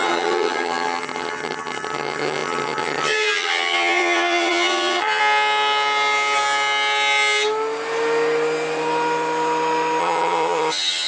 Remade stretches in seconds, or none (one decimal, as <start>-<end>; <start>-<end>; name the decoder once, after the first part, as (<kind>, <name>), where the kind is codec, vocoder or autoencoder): 0.0-5.2 (vocoder, HiFi-GAN); 10.0-11.1